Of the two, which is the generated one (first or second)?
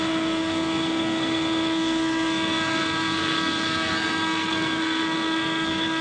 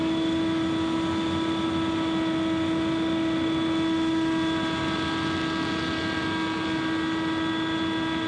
first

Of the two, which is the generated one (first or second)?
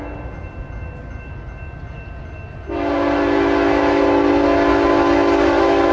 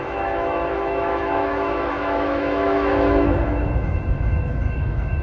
second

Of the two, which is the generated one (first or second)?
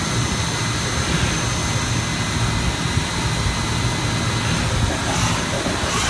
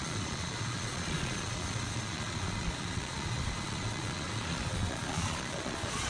second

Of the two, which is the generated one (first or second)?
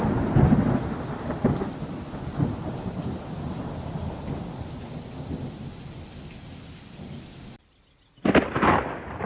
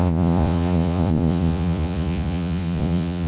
second